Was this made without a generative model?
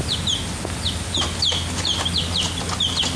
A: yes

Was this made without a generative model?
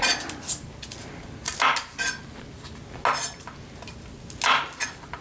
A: yes